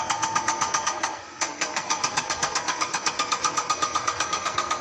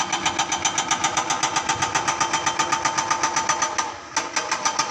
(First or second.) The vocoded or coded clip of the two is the first